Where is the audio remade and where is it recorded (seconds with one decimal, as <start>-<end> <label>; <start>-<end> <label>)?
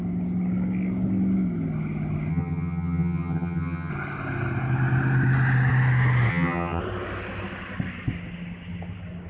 0.0-2.3 recorded; 2.3-3.9 remade; 3.9-6.3 recorded; 6.3-6.8 remade; 6.8-9.3 recorded